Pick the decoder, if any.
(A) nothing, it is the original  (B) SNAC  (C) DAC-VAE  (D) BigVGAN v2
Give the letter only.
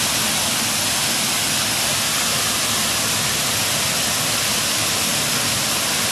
A